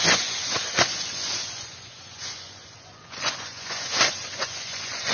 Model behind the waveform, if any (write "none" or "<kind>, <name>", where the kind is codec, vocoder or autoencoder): vocoder, Vocos